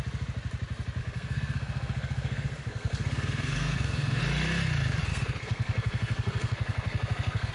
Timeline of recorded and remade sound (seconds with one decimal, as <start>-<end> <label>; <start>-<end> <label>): 0.0-1.0 recorded; 1.0-4.2 remade; 4.2-5.1 recorded; 5.1-7.5 remade